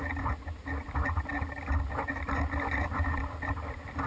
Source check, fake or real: real